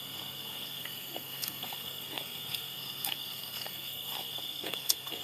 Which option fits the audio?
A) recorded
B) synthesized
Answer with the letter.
B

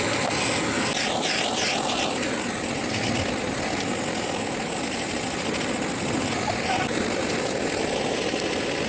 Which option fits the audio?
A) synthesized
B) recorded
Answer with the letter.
B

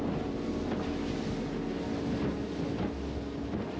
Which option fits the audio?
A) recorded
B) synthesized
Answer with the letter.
A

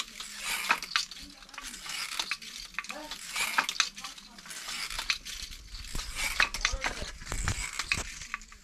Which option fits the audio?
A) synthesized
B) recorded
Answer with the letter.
B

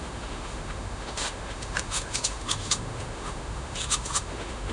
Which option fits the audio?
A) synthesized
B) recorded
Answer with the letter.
A